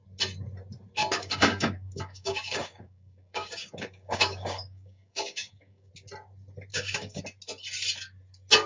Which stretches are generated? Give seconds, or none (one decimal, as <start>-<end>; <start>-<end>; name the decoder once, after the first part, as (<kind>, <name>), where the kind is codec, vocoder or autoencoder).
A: 1.0-5.9 (codec, DAC); 6.7-7.2